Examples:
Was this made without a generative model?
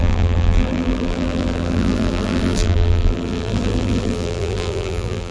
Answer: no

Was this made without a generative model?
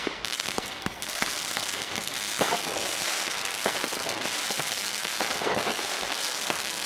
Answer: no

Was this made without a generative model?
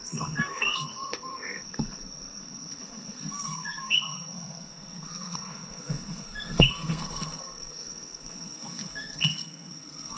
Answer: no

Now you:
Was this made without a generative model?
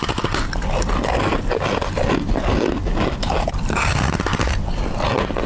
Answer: yes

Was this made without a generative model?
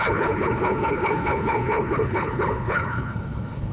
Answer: no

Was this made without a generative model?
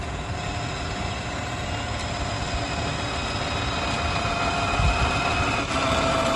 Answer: yes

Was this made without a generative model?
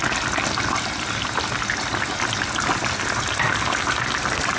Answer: yes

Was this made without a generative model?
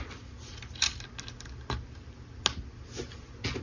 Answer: yes